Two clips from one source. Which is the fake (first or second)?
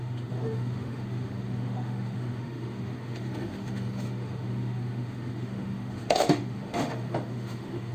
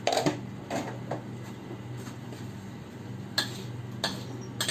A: first